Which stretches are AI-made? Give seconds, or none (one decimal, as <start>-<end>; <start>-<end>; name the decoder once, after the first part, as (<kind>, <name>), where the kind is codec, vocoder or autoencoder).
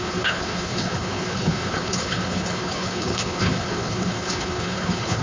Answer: 0.0-5.2 (codec, HILCodec)